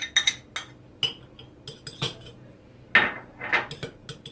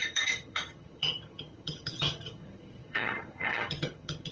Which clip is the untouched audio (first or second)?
first